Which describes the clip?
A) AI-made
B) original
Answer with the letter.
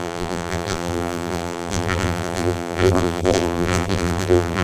A